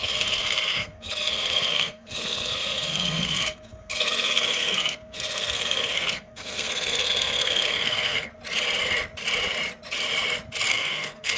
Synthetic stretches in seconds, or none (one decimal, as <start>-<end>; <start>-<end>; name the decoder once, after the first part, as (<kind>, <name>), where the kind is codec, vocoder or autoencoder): 0.0-8.3 (codec, SNAC); 10.7-11.4